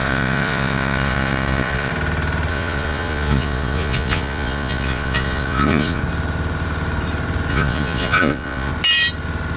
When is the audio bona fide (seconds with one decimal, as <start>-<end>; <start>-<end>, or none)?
1.9-2.5; 6.0-7.5; 8.7-9.6